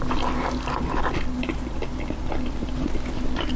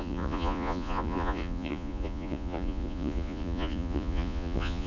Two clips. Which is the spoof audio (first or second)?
second